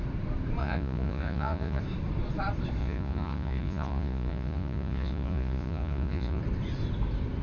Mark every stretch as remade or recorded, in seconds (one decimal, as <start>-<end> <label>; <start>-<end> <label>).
0.0-0.6 recorded; 0.6-1.8 remade; 1.8-2.8 recorded; 2.8-6.4 remade; 6.4-7.4 recorded